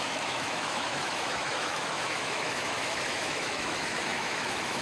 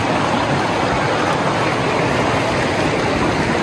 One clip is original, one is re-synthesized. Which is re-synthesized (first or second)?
first